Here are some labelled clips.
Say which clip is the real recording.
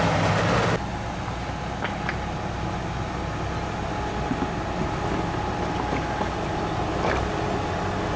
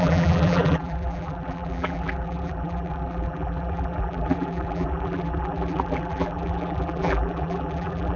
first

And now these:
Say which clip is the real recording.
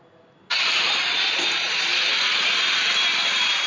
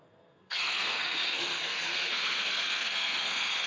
first